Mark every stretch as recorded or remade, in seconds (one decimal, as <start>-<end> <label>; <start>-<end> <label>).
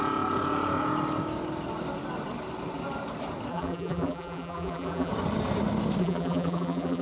0.0-3.5 recorded; 3.5-5.1 remade; 5.1-6.0 recorded; 6.0-7.0 remade